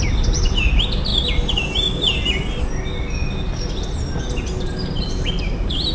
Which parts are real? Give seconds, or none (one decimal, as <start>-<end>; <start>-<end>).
1.1-4.6

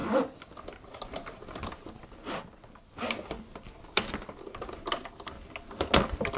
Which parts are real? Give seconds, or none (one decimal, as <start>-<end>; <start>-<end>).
0.0-6.4

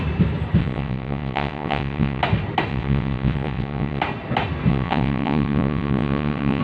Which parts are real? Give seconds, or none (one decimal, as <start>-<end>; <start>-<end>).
0.0-0.6; 2.2-2.7; 4.0-4.7

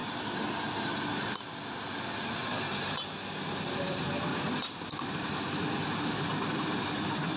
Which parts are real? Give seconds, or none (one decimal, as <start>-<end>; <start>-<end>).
0.0-3.8; 4.3-4.8

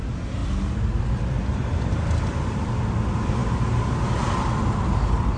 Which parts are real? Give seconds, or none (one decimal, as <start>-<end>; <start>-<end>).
0.0-5.4

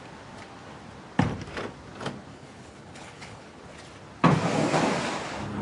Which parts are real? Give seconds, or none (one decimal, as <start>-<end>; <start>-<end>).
0.0-2.3; 3.6-5.6

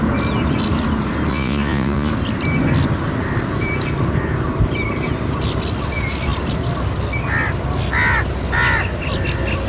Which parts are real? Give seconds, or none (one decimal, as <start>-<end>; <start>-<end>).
0.0-1.3; 2.1-9.7

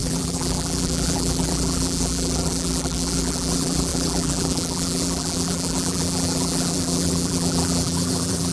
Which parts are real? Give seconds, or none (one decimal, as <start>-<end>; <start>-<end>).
none